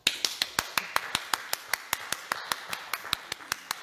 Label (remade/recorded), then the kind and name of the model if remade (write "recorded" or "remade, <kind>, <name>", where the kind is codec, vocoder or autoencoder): recorded